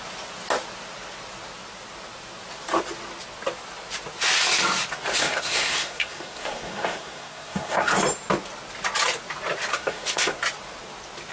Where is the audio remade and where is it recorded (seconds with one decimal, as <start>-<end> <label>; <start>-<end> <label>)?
0.0-5.1 recorded; 5.1-7.9 remade; 7.9-9.7 recorded; 9.7-10.4 remade; 10.4-11.3 recorded